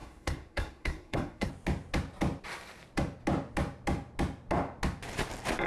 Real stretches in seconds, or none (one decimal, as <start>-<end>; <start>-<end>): 1.5-5.7